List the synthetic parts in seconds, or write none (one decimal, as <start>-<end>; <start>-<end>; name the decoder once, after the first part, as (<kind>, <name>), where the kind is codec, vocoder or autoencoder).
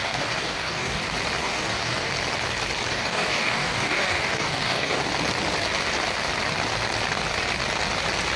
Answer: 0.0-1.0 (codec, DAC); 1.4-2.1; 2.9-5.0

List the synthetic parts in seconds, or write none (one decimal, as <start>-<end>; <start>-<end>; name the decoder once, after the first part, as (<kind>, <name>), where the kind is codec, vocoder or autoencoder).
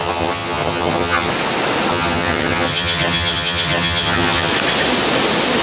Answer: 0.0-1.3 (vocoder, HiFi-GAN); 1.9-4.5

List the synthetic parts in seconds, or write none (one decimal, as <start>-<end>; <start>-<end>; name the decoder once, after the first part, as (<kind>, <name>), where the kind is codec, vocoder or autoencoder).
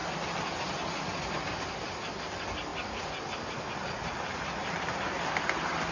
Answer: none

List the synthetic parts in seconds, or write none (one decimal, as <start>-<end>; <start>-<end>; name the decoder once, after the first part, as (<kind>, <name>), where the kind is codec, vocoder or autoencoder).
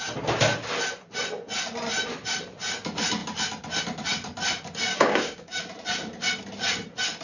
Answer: 4.9-5.6 (codec, DAC)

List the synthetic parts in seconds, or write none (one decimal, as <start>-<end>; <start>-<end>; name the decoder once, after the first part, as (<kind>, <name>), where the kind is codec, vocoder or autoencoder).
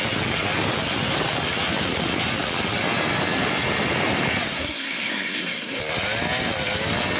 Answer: 4.5-5.8 (codec, SNAC)